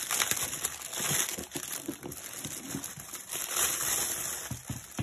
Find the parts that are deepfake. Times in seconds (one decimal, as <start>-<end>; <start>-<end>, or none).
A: 1.3-2.2